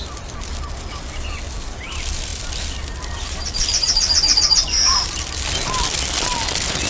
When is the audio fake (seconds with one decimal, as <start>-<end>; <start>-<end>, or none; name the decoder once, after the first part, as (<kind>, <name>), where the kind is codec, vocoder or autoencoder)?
0.0-6.9 (vocoder, BigVGAN v2)